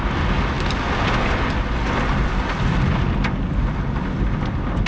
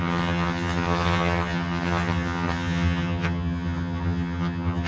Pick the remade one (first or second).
second